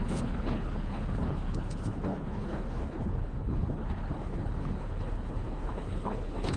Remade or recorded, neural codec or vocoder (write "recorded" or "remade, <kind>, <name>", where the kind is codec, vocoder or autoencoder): remade, codec, HILCodec